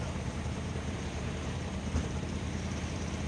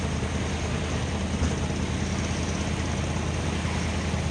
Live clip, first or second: second